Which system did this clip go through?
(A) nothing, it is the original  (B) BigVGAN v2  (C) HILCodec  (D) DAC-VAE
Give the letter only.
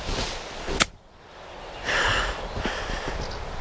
A